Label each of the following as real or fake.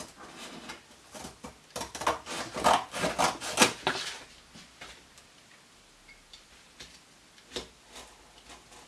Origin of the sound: real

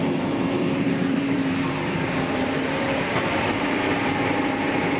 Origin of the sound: fake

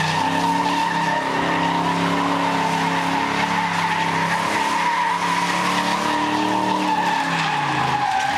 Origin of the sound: real